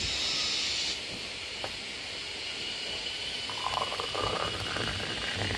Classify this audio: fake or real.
real